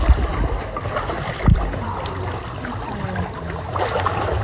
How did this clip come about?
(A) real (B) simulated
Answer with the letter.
A